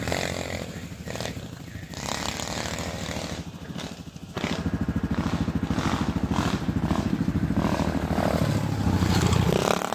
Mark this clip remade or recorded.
recorded